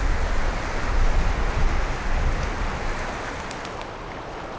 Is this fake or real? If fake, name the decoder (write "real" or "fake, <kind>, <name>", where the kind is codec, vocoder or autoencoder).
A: real